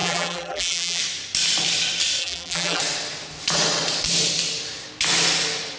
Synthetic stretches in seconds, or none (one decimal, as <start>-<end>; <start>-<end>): 0.0-1.0; 2.2-2.8